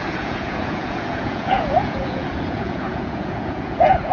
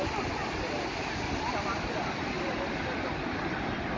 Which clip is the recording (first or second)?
second